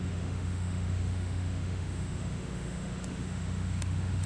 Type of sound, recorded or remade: remade